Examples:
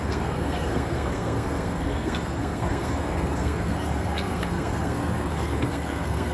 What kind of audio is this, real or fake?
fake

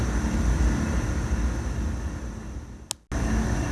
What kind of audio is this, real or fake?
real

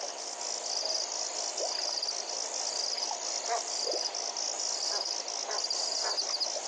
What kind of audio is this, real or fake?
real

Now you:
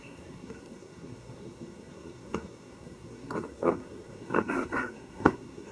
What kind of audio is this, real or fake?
fake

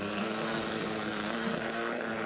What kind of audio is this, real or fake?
fake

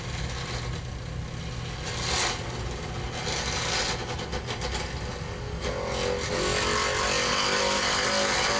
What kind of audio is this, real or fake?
real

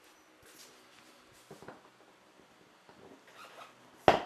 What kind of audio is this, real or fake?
real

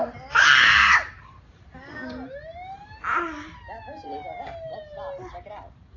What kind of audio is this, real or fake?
real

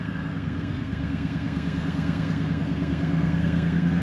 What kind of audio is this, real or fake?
fake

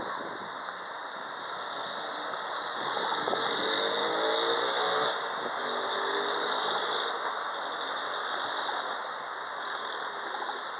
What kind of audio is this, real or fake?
real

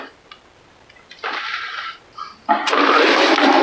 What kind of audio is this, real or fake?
real